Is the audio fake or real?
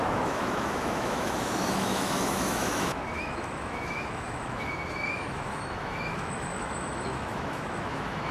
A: fake